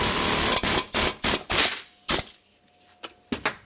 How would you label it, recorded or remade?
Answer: recorded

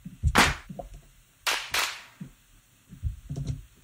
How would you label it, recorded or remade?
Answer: recorded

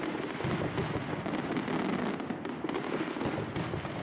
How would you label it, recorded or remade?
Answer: recorded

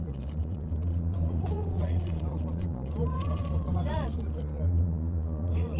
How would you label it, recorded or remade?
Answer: remade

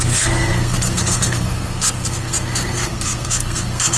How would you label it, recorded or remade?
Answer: remade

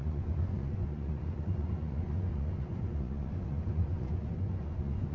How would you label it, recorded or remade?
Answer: remade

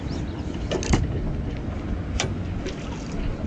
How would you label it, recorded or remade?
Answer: recorded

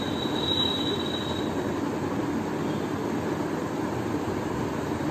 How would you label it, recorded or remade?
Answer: recorded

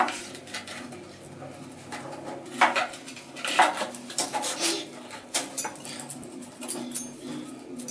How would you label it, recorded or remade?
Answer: recorded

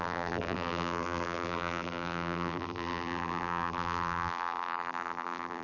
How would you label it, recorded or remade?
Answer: remade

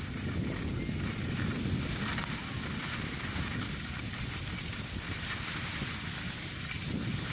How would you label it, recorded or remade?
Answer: recorded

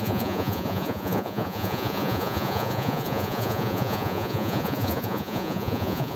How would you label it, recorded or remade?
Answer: remade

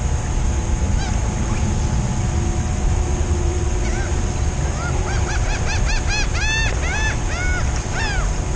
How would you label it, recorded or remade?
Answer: recorded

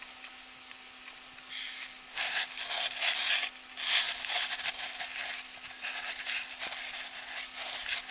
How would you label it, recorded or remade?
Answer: recorded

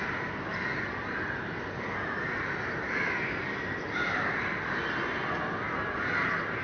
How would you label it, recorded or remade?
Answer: recorded